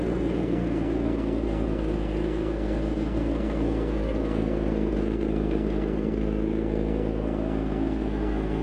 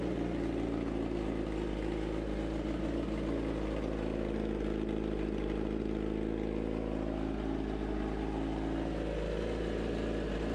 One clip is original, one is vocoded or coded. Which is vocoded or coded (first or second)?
first